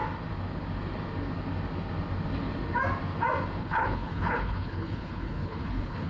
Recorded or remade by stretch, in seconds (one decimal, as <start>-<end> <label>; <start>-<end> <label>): 0.0-3.6 recorded; 3.6-6.1 remade